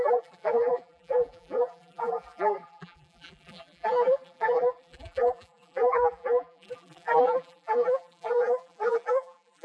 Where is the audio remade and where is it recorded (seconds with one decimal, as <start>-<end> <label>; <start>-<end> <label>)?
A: 0.0-9.6 remade